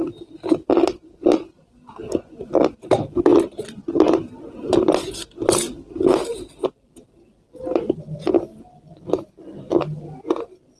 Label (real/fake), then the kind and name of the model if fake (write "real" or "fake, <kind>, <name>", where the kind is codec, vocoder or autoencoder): real